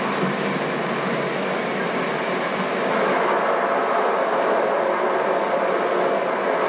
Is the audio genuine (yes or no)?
yes